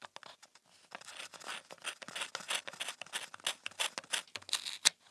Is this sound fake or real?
real